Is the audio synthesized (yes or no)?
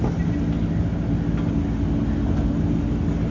no